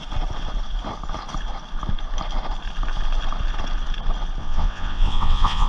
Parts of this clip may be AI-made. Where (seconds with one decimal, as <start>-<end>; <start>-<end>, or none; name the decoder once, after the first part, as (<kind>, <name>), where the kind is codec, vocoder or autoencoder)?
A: 4.4-5.7 (vocoder, WaveNeXt)